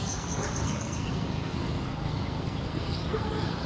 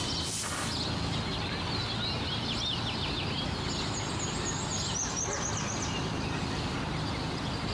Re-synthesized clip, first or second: first